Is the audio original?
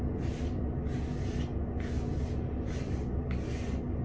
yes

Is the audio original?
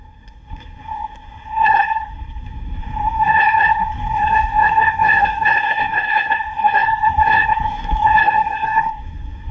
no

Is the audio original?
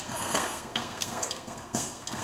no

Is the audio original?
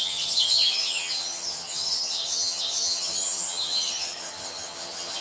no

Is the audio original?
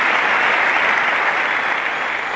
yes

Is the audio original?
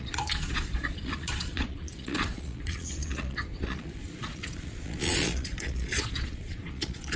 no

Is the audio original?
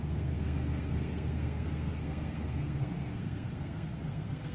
no